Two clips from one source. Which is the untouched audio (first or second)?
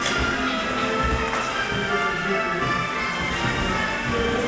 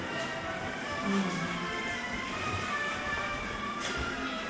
first